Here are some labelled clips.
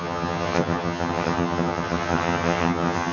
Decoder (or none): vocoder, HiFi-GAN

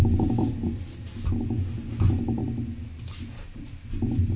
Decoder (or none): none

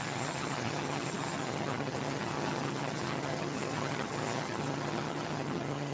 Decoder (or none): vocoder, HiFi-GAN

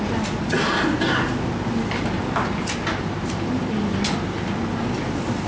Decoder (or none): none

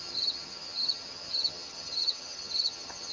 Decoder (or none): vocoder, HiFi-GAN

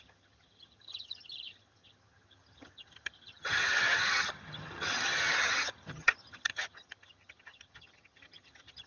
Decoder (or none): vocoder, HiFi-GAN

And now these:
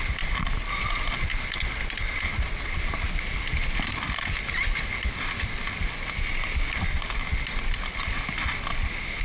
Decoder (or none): none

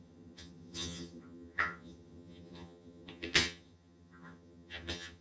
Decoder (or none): vocoder, HiFi-GAN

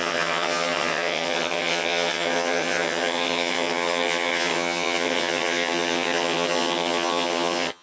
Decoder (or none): vocoder, HiFi-GAN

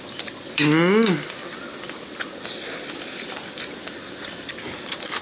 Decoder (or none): none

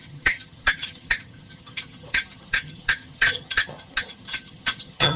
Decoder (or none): vocoder, HiFi-GAN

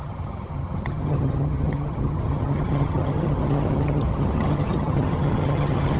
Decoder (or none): vocoder, HiFi-GAN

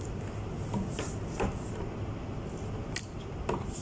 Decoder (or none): none